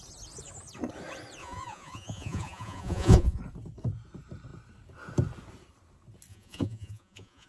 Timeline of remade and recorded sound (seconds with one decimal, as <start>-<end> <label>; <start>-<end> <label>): 0.0-1.4 recorded; 1.4-3.4 remade; 3.4-6.3 recorded; 6.3-7.5 remade